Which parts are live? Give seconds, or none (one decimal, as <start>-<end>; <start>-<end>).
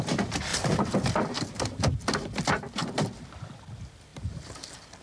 0.0-0.5; 1.8-4.1